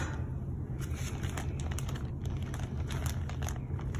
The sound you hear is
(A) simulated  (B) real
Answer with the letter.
B